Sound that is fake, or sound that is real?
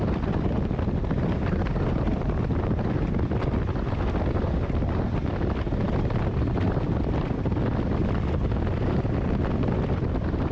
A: real